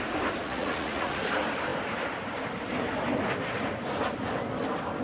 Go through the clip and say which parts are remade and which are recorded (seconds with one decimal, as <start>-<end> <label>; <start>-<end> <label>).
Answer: 0.0-0.4 recorded; 0.4-1.2 remade; 1.2-5.0 recorded